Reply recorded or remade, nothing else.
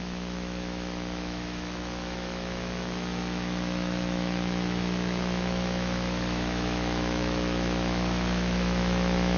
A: remade